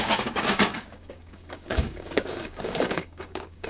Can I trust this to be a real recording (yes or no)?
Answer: no